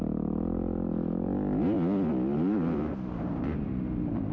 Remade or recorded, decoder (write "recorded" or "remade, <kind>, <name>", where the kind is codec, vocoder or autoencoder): recorded